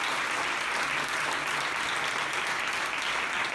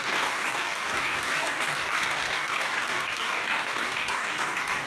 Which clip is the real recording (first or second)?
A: first